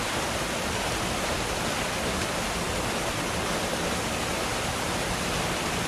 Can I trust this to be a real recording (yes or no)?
yes